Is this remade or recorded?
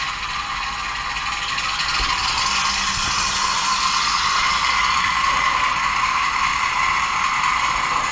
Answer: recorded